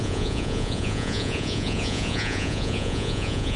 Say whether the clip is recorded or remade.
remade